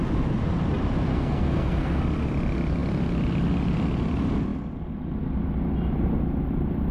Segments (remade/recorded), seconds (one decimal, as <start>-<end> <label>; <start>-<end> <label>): 0.0-1.1 recorded; 1.1-2.0 remade; 2.0-6.9 recorded